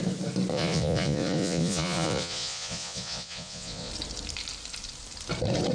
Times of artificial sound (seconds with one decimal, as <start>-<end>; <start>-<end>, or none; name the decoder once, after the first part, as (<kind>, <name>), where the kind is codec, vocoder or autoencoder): 0.5-3.9 (vocoder, Vocos)